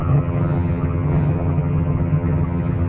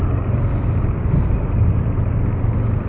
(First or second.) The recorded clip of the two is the second